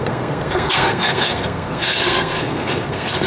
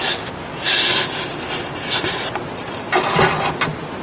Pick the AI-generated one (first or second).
first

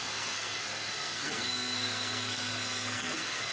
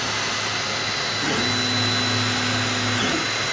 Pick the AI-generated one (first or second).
first